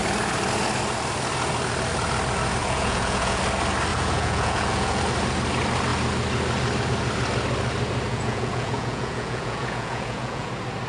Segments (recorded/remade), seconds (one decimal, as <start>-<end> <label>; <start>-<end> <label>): 0.0-2.6 recorded; 2.6-3.4 remade; 3.4-3.9 recorded; 3.9-5.0 remade; 5.0-8.1 recorded; 8.1-10.5 remade; 10.5-10.9 recorded